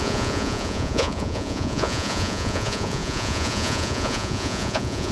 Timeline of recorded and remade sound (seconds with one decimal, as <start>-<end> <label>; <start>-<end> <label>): 0.0-5.1 remade